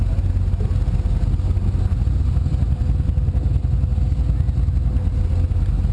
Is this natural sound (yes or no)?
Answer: yes